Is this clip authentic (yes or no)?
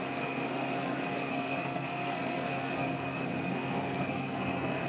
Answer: no